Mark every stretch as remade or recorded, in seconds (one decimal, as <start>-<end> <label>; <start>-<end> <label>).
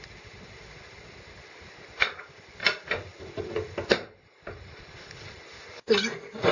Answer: 0.0-6.5 recorded